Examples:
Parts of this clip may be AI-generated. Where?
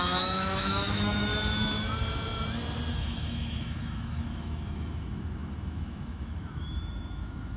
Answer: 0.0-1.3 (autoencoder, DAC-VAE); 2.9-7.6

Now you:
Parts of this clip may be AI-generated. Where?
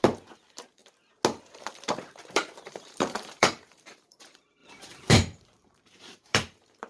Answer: 0.0-0.8 (vocoder, BigVGAN v2); 2.3-4.6; 5.1-6.9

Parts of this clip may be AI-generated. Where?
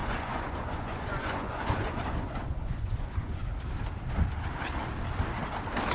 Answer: 0.0-3.5 (vocoder, Vocos)